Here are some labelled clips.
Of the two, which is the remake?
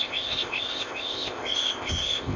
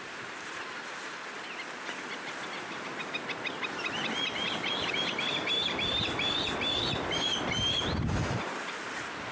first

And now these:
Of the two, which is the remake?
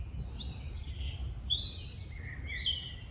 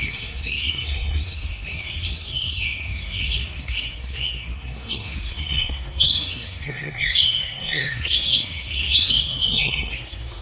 second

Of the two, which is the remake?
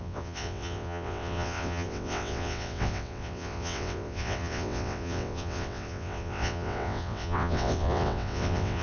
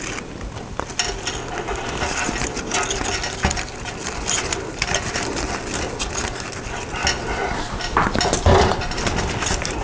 first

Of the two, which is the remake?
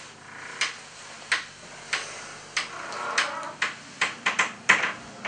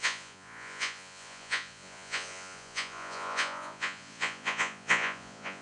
second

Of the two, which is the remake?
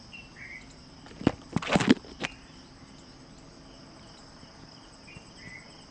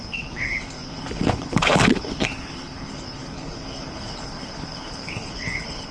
second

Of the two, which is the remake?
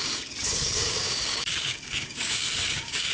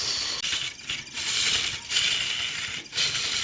first